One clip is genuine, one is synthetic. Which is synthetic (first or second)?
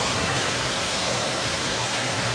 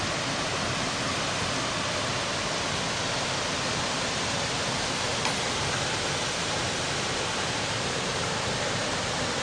first